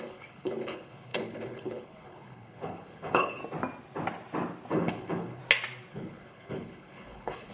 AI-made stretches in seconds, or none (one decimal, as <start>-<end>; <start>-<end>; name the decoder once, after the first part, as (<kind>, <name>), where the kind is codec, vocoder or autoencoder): 0.0-3.4 (codec, HILCodec); 4.7-5.4; 5.9-7.5